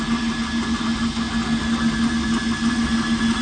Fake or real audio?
real